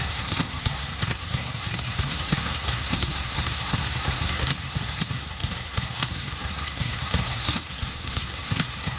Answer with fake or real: fake